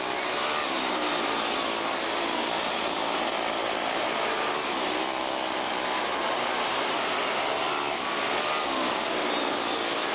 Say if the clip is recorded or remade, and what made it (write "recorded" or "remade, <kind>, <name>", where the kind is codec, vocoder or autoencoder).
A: recorded